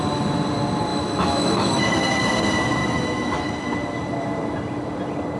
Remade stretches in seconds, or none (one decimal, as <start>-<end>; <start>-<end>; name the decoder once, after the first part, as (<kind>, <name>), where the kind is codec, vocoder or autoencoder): 0.9-1.8 (autoencoder, DAC-VAE); 2.8-3.5